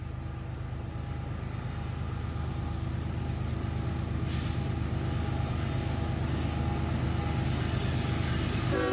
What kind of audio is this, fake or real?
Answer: real